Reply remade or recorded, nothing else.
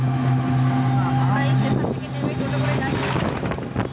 recorded